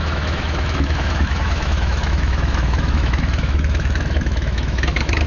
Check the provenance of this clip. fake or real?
fake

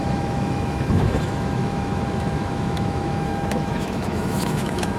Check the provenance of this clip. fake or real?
fake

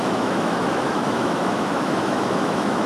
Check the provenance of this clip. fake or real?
fake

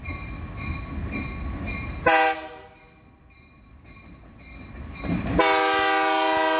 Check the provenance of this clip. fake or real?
real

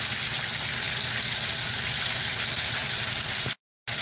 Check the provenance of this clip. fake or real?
real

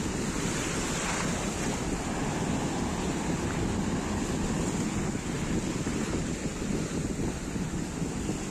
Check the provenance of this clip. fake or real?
real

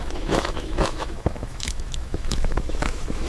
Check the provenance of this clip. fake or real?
fake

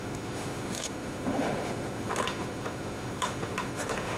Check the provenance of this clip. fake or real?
fake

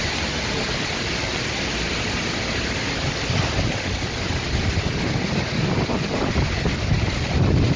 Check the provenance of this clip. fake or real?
real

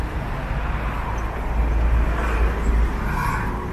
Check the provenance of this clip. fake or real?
real